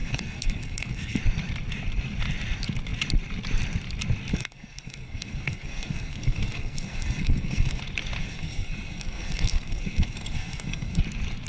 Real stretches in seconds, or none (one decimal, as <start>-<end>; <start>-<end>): 1.2-4.3; 7.8-8.2; 11.0-11.5